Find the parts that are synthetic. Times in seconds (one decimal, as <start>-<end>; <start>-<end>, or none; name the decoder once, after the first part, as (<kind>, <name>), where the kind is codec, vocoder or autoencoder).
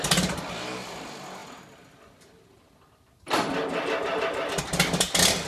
none